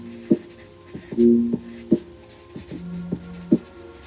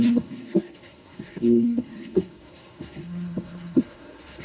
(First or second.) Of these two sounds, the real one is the first